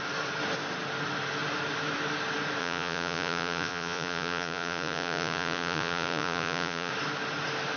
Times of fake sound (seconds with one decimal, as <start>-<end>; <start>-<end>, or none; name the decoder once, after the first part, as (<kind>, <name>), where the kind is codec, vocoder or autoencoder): 2.6-6.9 (vocoder, Vocos)